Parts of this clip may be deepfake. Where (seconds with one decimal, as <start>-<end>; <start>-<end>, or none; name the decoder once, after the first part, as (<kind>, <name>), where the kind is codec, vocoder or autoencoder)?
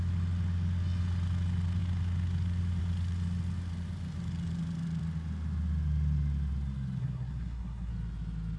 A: 7.0-7.9 (codec, SNAC)